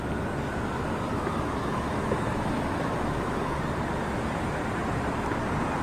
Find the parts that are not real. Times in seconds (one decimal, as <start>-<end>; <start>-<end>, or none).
1.1-3.6